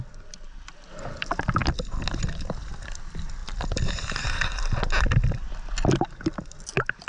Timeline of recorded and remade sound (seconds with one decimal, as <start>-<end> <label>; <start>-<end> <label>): 0.0-7.1 recorded